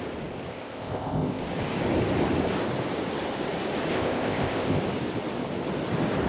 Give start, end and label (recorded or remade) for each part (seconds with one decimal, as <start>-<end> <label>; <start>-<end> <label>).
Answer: 0.0-0.5 recorded; 0.5-1.4 remade; 1.4-3.9 recorded; 3.9-4.8 remade; 4.8-6.3 recorded